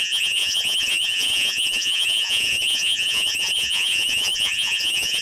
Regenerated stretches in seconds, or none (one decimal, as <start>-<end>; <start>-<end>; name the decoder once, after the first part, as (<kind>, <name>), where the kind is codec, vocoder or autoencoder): 0.0-5.2 (vocoder, Vocos)